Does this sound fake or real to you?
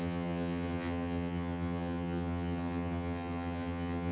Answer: fake